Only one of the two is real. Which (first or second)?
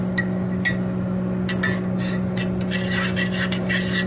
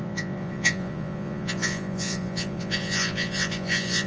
first